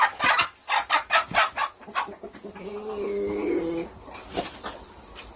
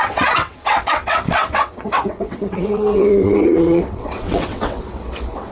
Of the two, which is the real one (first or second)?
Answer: first